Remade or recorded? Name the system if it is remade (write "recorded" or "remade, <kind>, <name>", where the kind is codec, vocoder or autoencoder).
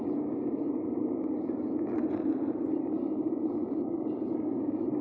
recorded